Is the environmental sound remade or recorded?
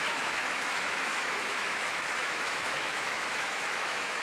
remade